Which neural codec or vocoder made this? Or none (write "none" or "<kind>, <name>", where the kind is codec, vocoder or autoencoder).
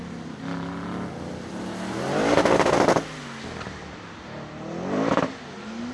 none